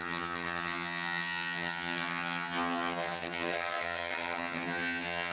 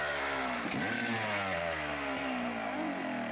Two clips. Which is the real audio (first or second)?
second